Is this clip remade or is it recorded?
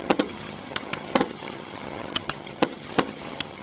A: remade